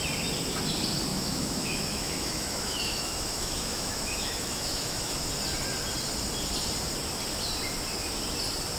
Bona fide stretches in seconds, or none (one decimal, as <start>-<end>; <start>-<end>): 0.0-1.1; 5.3-8.8